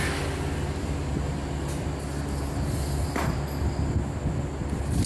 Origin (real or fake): real